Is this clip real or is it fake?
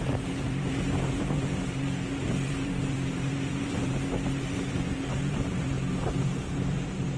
fake